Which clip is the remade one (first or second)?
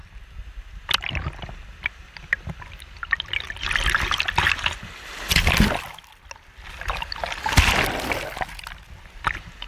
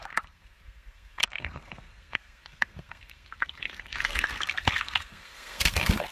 second